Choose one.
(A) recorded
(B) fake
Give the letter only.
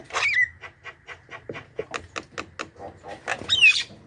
A